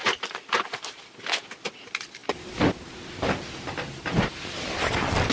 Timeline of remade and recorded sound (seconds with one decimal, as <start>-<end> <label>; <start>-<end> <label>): 0.0-5.3 recorded